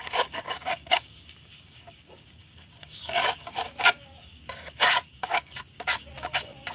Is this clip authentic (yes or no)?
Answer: no